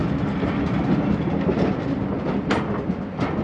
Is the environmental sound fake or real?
real